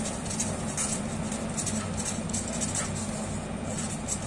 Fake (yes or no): no